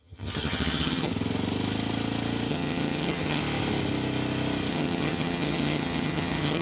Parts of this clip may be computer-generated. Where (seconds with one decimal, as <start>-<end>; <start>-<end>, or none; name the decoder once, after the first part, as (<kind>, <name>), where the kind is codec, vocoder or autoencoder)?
0.0-1.1 (vocoder, HiFi-GAN); 2.5-3.4; 4.7-6.6